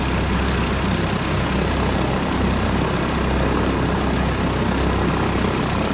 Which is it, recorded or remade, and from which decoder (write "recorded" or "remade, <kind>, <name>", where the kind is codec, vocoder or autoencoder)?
recorded